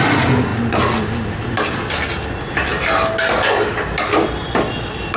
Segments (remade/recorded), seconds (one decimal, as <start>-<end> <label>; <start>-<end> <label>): 0.0-5.2 recorded

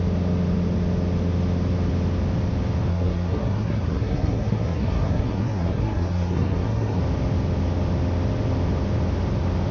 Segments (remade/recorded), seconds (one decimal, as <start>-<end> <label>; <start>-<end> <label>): 0.0-2.9 recorded; 2.9-7.0 remade; 7.0-9.7 recorded

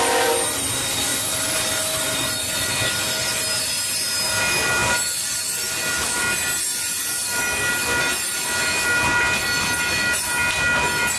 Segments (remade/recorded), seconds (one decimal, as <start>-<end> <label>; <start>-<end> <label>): 0.0-11.2 recorded

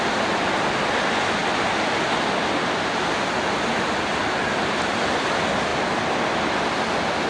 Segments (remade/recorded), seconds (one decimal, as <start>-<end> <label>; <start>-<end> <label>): 0.0-7.3 recorded

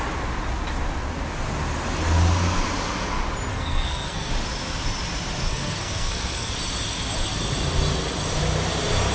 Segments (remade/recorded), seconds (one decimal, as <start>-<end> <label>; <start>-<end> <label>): 0.0-3.5 recorded; 3.5-4.3 remade; 4.3-5.5 recorded; 5.5-6.5 remade; 6.5-9.1 recorded

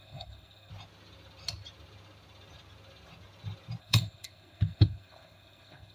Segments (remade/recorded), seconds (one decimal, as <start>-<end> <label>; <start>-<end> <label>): 0.0-0.7 remade; 0.7-3.8 recorded; 3.8-5.9 remade